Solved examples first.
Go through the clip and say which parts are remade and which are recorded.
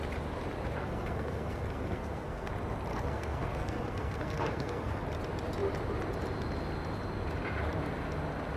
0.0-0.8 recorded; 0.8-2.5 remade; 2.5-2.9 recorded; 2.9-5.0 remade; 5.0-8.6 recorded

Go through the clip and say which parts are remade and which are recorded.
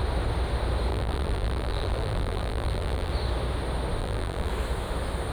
0.0-0.9 recorded; 0.9-3.1 remade; 3.1-4.0 recorded; 4.0-4.5 remade; 4.5-5.3 recorded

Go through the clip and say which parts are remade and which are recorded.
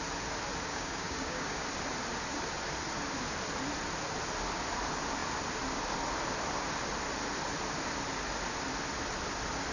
0.0-0.7 recorded; 0.7-1.6 remade; 1.6-9.7 recorded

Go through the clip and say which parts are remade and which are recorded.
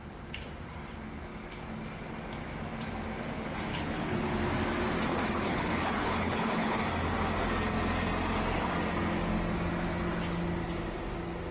0.0-3.7 recorded; 3.7-4.4 remade; 4.4-5.1 recorded; 5.1-6.8 remade; 6.8-11.5 recorded